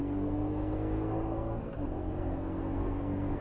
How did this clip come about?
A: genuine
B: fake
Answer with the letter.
B